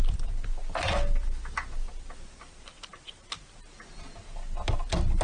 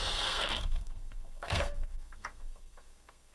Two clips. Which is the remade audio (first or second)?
second